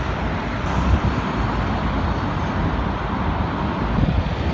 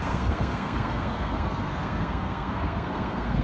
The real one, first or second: first